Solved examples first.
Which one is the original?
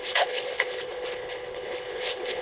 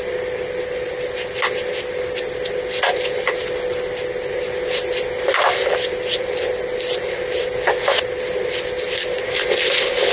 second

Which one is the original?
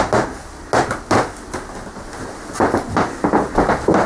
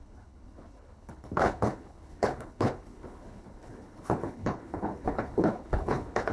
first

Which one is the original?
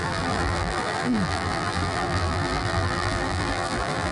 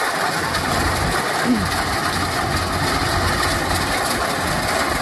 second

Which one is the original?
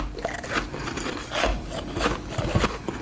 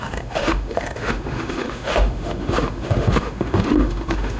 first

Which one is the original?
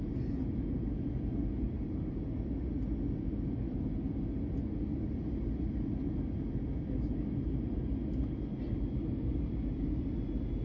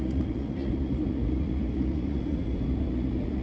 first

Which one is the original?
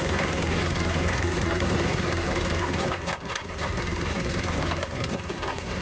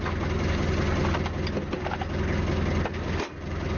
second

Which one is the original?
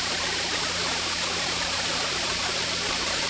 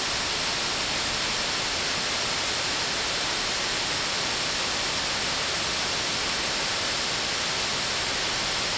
second